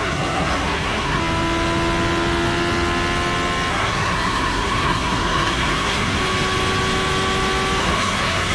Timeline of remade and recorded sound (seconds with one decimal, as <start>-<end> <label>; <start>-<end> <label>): 0.0-1.2 remade; 1.2-3.7 recorded; 3.7-6.2 remade; 6.2-7.8 recorded; 7.8-8.5 remade